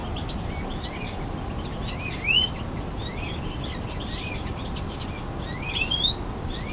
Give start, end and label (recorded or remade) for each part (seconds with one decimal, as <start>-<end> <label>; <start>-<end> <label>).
0.0-6.7 recorded